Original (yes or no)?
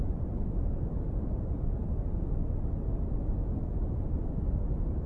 yes